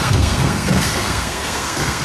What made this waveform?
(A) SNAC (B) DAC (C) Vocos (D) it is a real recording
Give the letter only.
A